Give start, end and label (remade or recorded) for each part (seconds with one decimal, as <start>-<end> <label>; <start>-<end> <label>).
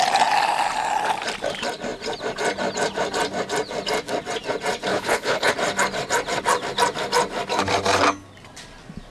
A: 0.0-4.9 recorded; 4.9-5.5 remade; 5.5-9.1 recorded